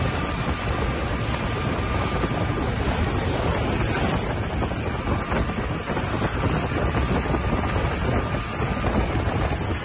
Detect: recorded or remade recorded